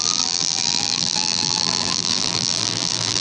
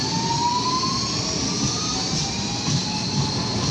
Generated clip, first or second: first